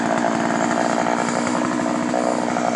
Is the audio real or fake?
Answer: real